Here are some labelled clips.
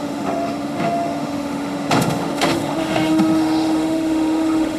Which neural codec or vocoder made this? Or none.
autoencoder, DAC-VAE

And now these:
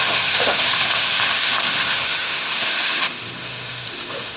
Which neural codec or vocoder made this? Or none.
autoencoder, DAC-VAE